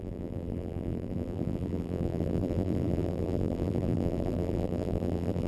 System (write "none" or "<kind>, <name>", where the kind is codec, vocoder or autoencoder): vocoder, BigVGAN v2